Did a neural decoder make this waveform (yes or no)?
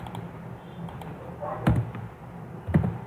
yes